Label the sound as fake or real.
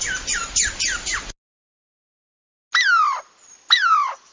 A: real